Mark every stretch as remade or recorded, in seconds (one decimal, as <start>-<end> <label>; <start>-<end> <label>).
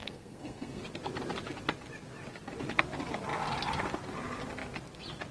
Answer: 0.0-0.8 remade; 0.8-5.3 recorded